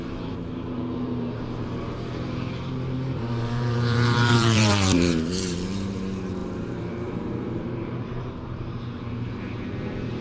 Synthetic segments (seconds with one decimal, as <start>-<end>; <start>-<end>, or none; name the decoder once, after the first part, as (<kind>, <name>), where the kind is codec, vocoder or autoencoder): 0.0-10.2 (vocoder, BigVGAN v2)